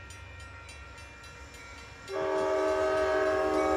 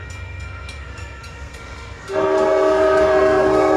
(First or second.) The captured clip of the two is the first